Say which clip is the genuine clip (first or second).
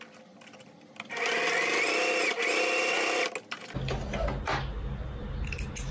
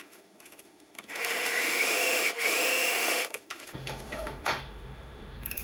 first